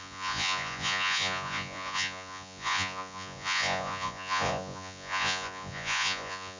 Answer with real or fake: fake